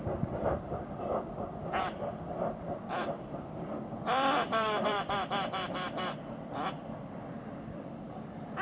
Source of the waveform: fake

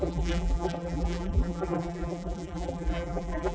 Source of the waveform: fake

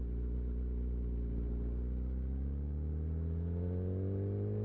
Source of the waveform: real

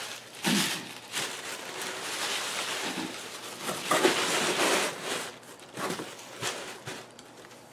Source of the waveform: real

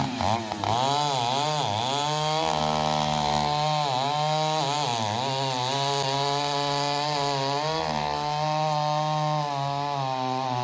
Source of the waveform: real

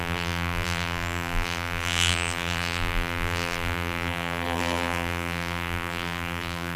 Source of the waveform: fake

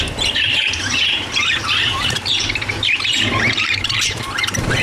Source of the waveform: fake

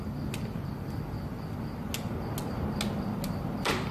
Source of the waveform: real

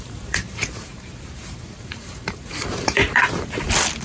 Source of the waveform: fake